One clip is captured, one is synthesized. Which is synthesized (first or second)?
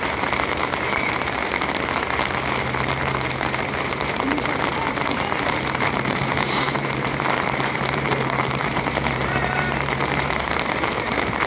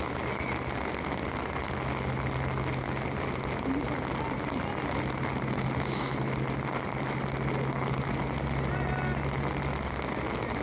first